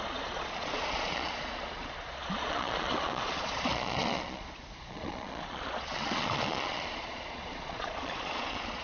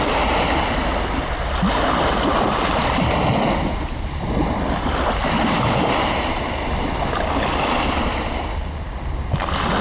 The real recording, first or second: second